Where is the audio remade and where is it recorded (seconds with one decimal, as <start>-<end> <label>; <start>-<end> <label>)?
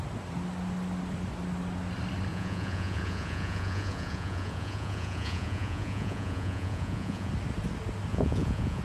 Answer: 0.0-2.3 recorded; 2.3-7.3 remade; 7.3-8.1 recorded; 8.1-8.8 remade